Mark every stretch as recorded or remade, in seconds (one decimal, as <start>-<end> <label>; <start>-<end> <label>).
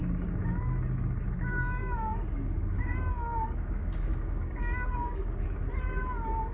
0.0-1.8 recorded; 1.8-5.4 remade; 5.4-6.5 recorded